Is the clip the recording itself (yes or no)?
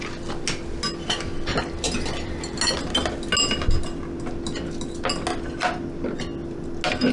yes